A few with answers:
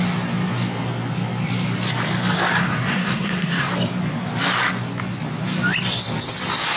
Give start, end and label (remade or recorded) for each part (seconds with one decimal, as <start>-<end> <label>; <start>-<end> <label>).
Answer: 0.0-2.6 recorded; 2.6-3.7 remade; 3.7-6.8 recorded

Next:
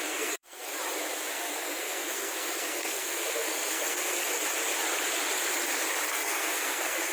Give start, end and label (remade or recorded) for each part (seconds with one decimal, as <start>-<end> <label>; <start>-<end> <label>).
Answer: 0.0-0.7 remade; 0.7-1.3 recorded; 1.3-4.2 remade; 4.2-6.1 recorded; 6.1-7.1 remade

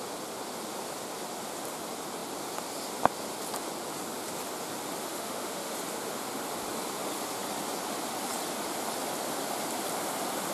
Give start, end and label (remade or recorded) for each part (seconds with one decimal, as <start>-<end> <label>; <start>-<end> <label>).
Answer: 0.0-5.1 recorded; 5.1-5.7 remade; 5.7-10.5 recorded